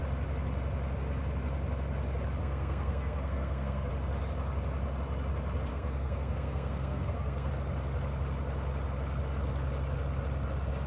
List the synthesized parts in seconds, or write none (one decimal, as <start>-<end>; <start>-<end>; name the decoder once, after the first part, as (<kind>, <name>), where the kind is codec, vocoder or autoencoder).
2.4-3.9 (codec, SNAC); 5.7-7.5